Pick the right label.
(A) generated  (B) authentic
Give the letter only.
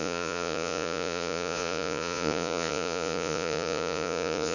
A